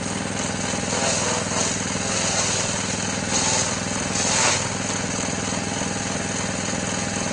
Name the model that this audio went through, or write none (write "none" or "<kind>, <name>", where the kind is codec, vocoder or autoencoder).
none